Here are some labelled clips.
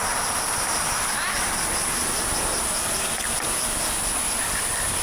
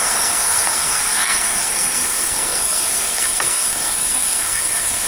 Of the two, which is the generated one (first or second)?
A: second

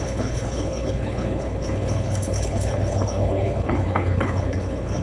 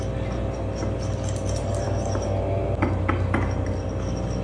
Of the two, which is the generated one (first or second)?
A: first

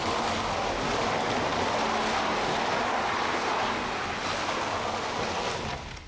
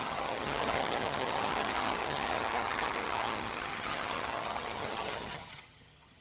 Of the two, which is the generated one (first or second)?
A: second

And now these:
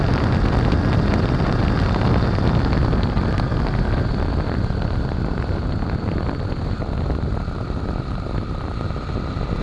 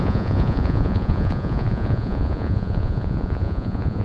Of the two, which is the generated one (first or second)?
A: second